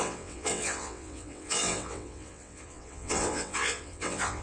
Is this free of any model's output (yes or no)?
no